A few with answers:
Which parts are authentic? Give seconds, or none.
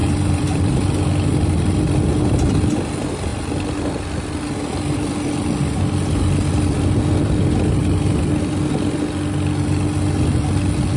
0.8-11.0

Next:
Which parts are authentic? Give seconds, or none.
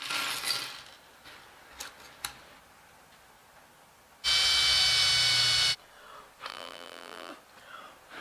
0.0-6.5; 7.3-8.2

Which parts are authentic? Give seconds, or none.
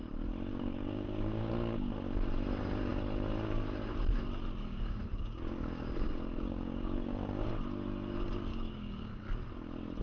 0.0-0.5; 1.5-4.6; 7.5-8.5; 9.1-10.0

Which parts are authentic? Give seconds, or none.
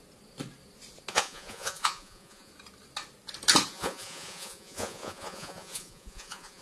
0.0-1.1; 2.5-3.7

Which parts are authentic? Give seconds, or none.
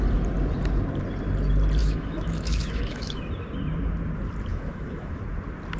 0.0-1.8; 3.3-4.5; 5.2-5.8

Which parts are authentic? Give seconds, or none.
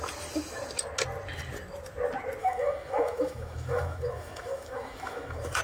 0.0-2.4